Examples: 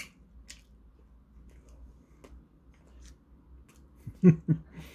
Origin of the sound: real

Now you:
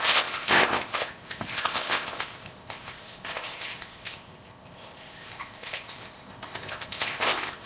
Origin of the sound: fake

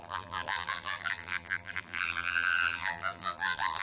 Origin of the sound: fake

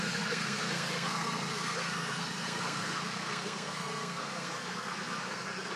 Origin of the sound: fake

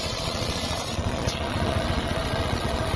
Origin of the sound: fake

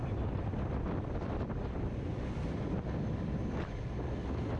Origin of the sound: fake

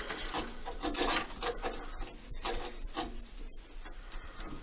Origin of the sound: fake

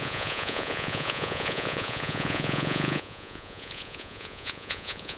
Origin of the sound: fake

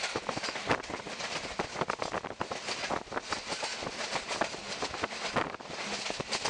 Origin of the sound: real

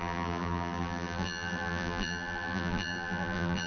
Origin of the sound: fake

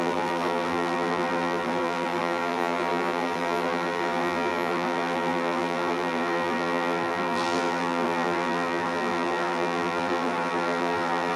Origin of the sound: fake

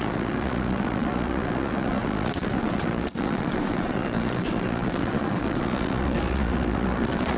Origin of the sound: fake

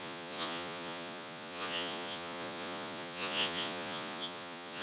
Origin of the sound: fake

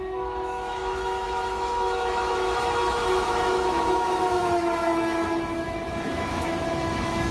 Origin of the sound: fake